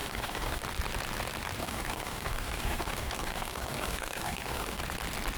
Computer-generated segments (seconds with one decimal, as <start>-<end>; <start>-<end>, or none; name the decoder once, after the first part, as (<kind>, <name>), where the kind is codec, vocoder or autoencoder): 0.0-0.6 (codec, DAC); 1.6-4.8